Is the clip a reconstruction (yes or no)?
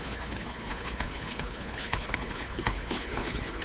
yes